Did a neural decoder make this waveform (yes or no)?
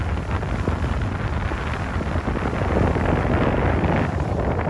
no